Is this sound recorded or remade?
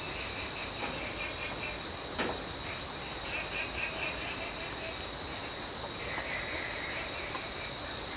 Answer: recorded